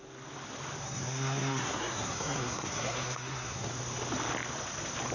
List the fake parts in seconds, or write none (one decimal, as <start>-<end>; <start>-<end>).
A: 0.8-3.7